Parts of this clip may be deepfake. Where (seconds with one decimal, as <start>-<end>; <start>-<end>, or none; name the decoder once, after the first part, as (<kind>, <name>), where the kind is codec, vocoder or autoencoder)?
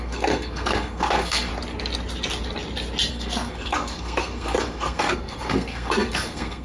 0.0-1.5 (codec, SNAC); 3.1-6.6